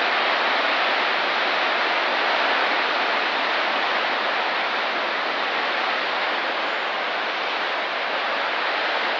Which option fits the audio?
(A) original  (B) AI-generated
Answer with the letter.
A